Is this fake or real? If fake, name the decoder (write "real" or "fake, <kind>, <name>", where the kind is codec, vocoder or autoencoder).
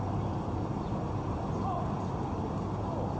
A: real